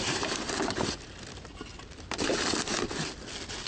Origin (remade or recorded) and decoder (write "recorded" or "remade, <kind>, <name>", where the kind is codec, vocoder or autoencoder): recorded